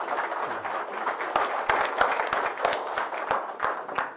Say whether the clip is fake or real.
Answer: real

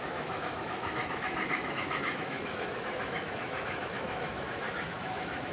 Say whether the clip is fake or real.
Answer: fake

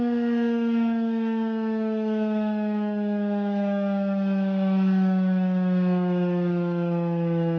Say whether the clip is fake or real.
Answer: fake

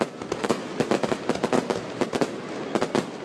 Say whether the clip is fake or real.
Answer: real